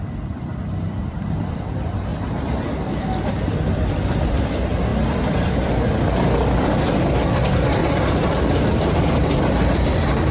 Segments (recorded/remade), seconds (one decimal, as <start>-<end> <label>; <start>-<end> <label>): 0.0-4.9 remade; 4.9-6.7 recorded; 6.7-10.3 remade